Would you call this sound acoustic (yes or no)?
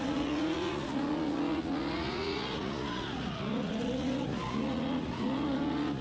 no